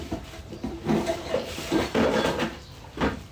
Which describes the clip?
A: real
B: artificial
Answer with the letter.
B